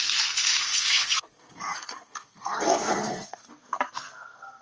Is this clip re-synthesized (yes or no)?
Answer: yes